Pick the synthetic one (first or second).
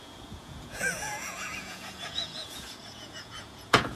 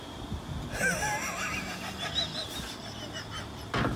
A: first